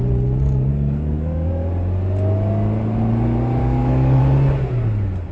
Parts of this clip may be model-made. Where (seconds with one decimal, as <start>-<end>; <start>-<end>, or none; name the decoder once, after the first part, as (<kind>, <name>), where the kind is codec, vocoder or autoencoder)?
0.7-1.5 (codec, DAC); 3.6-4.2